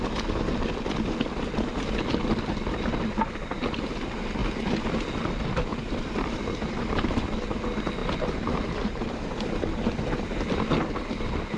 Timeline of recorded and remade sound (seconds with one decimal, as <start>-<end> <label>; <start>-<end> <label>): 0.0-5.7 recorded; 5.7-7.1 remade; 7.1-8.0 recorded; 8.0-9.3 remade; 9.3-11.6 recorded